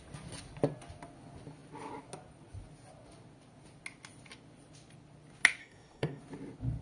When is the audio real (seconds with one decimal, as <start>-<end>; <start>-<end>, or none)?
0.0-5.6; 6.2-6.8